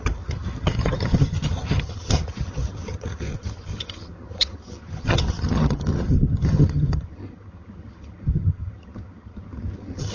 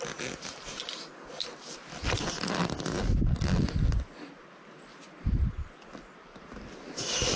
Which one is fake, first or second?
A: first